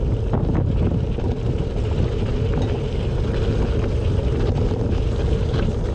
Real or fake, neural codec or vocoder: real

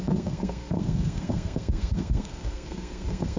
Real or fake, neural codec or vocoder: fake, codec, SNAC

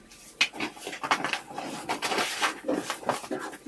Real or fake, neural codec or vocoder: real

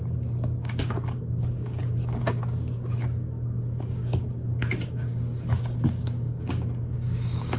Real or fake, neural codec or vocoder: fake, codec, DAC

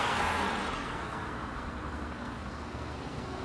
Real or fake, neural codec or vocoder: fake, codec, SNAC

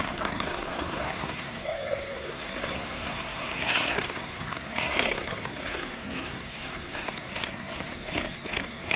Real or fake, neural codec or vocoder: fake, codec, SNAC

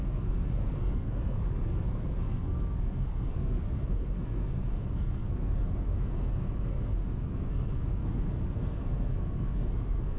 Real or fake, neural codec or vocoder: fake, codec, SNAC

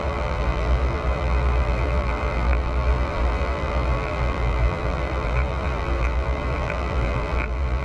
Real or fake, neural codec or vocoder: fake, vocoder, BigVGAN v2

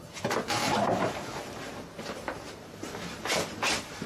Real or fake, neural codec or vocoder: fake, vocoder, BigVGAN v2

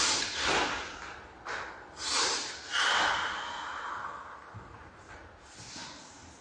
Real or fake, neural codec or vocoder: real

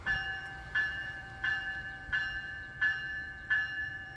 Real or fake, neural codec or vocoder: fake, vocoder, BigVGAN v2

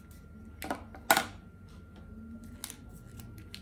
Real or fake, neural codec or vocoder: real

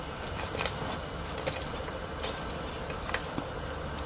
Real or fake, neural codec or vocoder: real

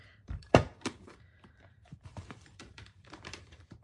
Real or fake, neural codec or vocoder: fake, vocoder, BigVGAN v2